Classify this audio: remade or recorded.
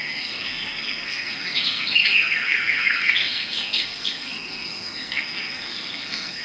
remade